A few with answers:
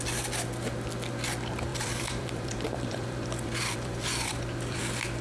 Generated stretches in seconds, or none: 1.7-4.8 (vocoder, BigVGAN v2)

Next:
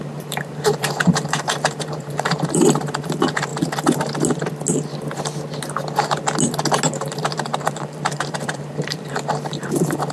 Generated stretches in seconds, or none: 0.0-3.5 (vocoder, BigVGAN v2); 6.9-10.1

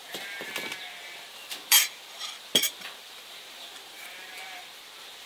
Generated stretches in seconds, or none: 0.0-0.5 (vocoder, BigVGAN v2); 1.4-4.6

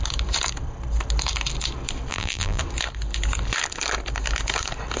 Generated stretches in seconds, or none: 2.1-2.6 (vocoder, BigVGAN v2)